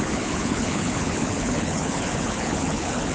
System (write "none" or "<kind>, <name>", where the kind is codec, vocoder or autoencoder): codec, HILCodec